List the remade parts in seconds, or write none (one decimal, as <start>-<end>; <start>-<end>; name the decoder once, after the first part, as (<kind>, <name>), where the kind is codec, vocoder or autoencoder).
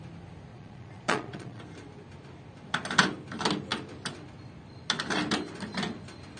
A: 0.5-1.6 (vocoder, Vocos)